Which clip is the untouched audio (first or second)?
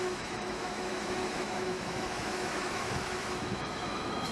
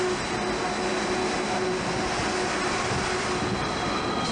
second